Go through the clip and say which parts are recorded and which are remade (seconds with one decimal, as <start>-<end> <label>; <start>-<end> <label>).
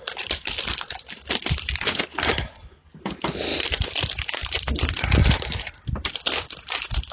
0.0-3.5 remade; 3.5-4.8 recorded; 4.8-7.1 remade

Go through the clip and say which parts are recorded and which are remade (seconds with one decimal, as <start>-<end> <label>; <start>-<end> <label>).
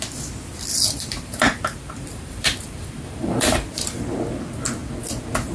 0.0-0.7 recorded; 0.7-4.0 remade; 4.0-5.5 recorded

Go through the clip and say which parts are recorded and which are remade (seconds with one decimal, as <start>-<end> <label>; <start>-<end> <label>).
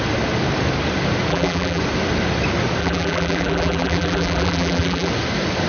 0.0-1.3 recorded; 1.3-1.8 remade; 1.8-2.8 recorded; 2.8-5.1 remade; 5.1-5.7 recorded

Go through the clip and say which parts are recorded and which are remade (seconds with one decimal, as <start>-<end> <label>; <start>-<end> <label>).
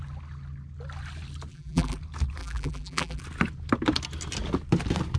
0.0-1.5 recorded; 1.5-2.0 remade; 2.0-2.4 recorded; 2.4-3.2 remade; 3.2-5.2 recorded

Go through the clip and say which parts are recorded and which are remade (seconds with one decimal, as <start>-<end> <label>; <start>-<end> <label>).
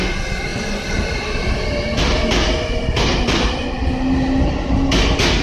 0.0-0.5 recorded; 0.5-3.7 remade; 3.7-5.4 recorded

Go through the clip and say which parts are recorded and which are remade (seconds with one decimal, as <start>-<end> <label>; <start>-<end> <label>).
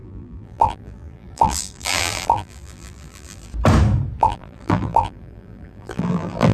0.0-3.5 remade; 3.5-4.2 recorded; 4.2-6.5 remade